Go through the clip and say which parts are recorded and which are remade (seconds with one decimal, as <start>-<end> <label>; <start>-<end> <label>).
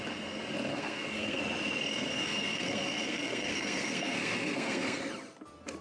0.0-0.7 recorded; 0.7-1.4 remade; 1.4-2.1 recorded; 2.1-5.0 remade; 5.0-5.8 recorded